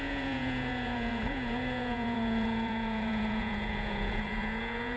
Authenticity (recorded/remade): remade